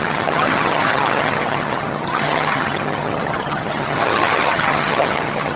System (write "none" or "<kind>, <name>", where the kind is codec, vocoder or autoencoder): vocoder, HiFi-GAN